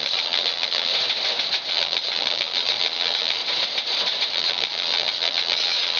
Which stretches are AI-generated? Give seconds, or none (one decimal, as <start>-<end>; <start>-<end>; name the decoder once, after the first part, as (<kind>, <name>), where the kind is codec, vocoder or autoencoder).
0.0-0.9 (vocoder, Vocos); 1.7-3.4; 4.3-6.0